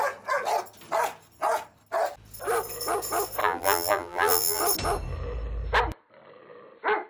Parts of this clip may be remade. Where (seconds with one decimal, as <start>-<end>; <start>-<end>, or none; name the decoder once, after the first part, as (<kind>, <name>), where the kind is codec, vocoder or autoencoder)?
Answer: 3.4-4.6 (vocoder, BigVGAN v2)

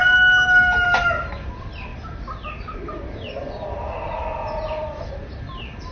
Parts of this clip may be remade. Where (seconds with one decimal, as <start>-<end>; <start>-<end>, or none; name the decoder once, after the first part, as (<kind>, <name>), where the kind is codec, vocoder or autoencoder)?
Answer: 1.9-5.4 (vocoder, BigVGAN v2)

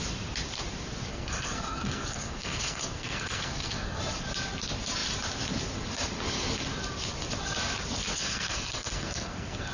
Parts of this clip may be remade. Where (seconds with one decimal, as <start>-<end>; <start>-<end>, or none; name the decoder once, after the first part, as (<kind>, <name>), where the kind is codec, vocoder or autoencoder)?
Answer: 1.1-4.0 (codec, SNAC); 8.1-9.7

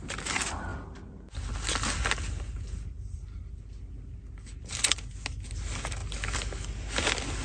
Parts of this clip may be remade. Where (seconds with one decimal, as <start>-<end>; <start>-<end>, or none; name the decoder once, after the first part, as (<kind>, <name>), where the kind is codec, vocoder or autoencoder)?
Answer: none

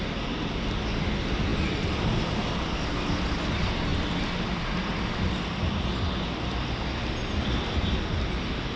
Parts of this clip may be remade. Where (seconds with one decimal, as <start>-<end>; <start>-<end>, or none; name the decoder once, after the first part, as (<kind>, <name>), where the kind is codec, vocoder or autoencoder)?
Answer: none

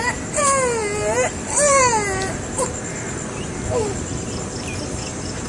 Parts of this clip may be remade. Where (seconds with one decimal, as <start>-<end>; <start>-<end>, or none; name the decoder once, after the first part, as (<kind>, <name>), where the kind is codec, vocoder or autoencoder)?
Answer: none

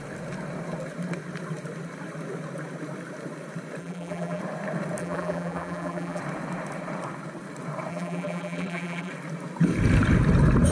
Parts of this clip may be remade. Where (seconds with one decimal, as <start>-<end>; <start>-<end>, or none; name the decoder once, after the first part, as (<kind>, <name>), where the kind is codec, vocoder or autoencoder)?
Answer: 3.8-4.4 (vocoder, BigVGAN v2); 5.0-6.2; 7.9-9.1